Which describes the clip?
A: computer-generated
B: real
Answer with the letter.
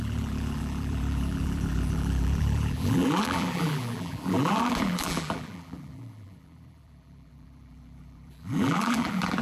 A